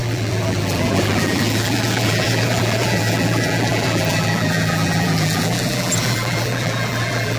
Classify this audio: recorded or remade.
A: remade